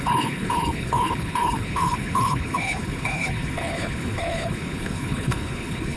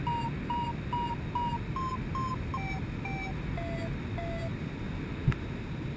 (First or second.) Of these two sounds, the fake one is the first